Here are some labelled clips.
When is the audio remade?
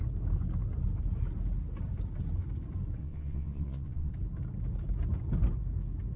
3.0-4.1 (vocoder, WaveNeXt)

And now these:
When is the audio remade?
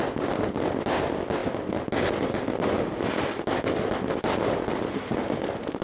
none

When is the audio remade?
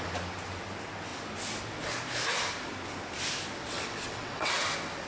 3.6-4.5 (vocoder, WaveNeXt)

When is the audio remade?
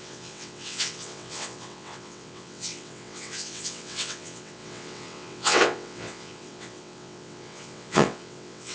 0.0-8.7 (vocoder, WaveNeXt)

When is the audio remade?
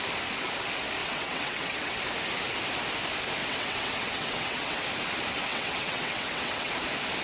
1.0-2.0 (vocoder, WaveNeXt); 3.4-4.8; 5.5-6.7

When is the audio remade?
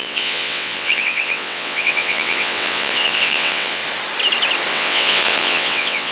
0.0-3.8 (vocoder, WaveNeXt); 4.7-6.1